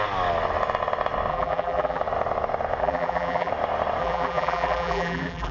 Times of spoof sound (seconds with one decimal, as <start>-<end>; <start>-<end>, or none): 1.3-2.0; 2.8-3.5; 4.0-5.5